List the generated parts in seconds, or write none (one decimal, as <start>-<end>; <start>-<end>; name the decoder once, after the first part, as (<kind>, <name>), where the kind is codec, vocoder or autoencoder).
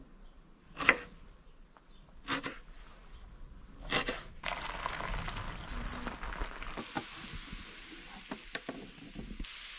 none